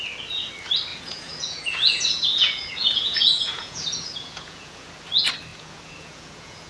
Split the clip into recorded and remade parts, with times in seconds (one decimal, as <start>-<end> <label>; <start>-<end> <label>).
0.0-0.9 recorded; 0.9-4.9 remade; 4.9-5.5 recorded; 5.5-6.7 remade